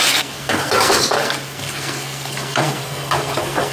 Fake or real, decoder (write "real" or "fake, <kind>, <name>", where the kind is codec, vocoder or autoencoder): fake, codec, SNAC